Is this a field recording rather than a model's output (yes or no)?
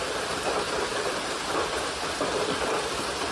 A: yes